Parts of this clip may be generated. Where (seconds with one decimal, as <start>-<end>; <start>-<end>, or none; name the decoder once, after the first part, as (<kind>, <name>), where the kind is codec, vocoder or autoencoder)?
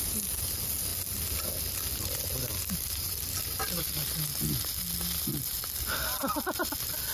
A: none